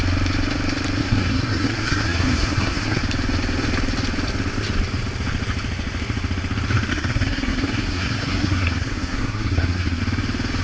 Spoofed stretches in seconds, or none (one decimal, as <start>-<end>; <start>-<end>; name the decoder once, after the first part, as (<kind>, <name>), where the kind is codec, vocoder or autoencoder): 1.0-3.0 (codec, SNAC); 6.9-10.0